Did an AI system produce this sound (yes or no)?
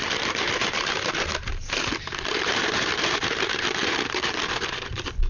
yes